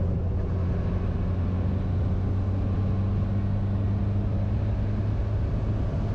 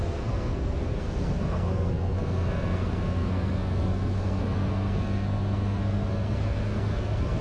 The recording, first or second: first